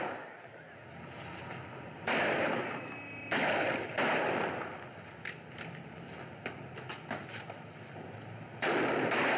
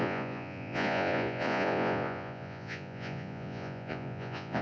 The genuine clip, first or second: first